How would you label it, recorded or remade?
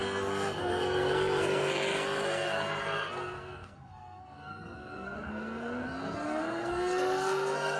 remade